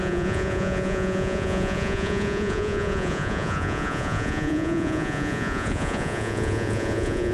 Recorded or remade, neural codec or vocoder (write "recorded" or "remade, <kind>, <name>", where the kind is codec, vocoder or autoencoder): remade, vocoder, Vocos